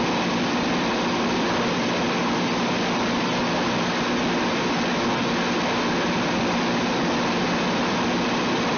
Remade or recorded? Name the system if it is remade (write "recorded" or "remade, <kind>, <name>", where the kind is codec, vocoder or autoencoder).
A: recorded